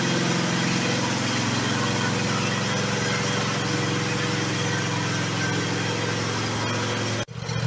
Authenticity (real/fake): real